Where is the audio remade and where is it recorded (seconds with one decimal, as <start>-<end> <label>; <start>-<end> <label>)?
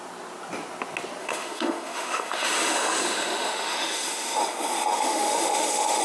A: 0.0-1.2 recorded; 1.2-4.4 remade; 4.4-4.9 recorded; 4.9-6.0 remade